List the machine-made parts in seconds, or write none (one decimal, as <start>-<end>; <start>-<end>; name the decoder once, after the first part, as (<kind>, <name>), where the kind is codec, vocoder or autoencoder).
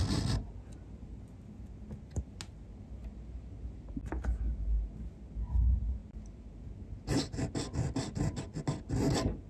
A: none